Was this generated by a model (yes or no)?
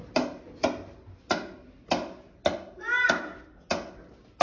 no